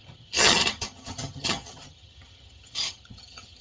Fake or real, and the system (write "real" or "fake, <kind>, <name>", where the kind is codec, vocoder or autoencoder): fake, vocoder, HiFi-GAN